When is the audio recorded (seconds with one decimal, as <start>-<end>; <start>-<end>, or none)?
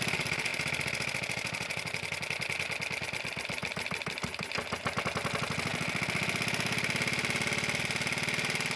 0.0-8.8